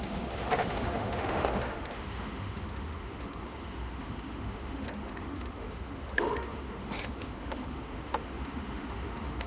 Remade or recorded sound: remade